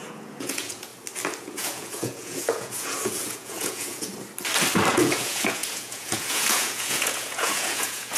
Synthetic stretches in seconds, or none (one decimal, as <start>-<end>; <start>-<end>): 0.0-0.9; 1.4-4.1; 4.9-8.2